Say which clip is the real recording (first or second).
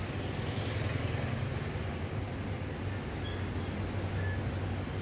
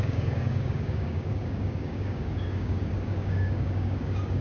first